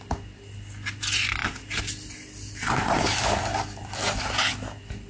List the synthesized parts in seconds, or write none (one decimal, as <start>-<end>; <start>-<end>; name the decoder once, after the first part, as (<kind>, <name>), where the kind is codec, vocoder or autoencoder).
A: none